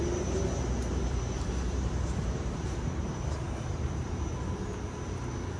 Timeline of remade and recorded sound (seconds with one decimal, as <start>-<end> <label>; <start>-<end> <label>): 0.0-0.8 recorded; 0.8-4.2 remade; 4.2-5.6 recorded

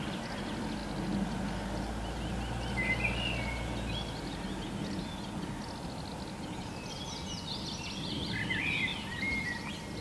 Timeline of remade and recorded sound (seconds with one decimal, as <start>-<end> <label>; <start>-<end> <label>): 0.0-8.9 recorded; 8.9-9.5 remade; 9.5-10.0 recorded